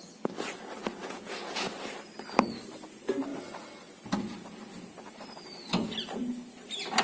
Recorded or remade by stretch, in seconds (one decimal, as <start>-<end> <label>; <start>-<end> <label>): 0.0-1.0 recorded; 1.0-1.6 remade; 1.6-7.0 recorded

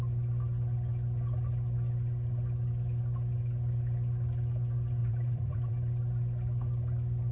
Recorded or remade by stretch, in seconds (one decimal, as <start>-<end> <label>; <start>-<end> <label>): 0.0-5.0 recorded; 5.0-5.7 remade; 5.7-7.3 recorded

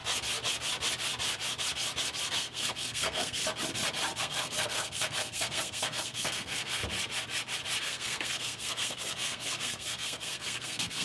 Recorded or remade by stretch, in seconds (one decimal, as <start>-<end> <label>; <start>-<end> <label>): 0.0-2.3 recorded; 2.3-3.4 remade; 3.4-4.2 recorded; 4.2-6.8 remade; 6.8-7.8 recorded; 7.8-11.0 remade

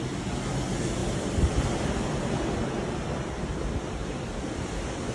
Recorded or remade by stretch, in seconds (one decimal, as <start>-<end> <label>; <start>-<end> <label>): 0.0-1.0 recorded; 1.0-1.7 remade; 1.7-4.0 recorded; 4.0-5.1 remade